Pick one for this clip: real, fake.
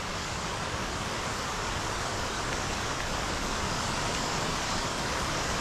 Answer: fake